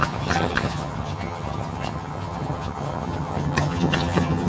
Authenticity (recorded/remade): remade